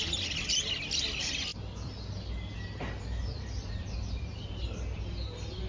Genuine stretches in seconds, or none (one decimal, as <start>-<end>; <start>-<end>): 0.0-5.7